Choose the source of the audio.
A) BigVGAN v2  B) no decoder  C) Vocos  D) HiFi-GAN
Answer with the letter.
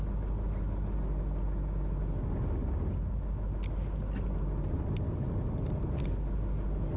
B